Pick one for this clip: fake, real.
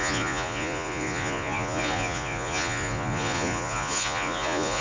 fake